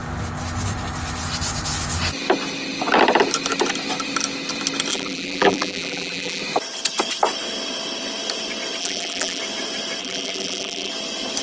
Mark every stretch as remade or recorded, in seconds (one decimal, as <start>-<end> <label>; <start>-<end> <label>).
0.0-4.9 recorded; 4.9-6.4 remade; 6.4-8.8 recorded; 8.8-9.4 remade; 9.4-10.0 recorded; 10.0-10.9 remade; 10.9-11.4 recorded